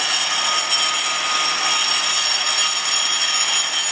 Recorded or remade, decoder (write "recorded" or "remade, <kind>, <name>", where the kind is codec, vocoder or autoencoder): recorded